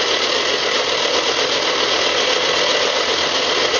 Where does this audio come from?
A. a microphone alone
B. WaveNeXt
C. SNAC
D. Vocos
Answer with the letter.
A